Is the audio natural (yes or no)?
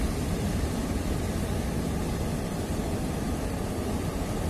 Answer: yes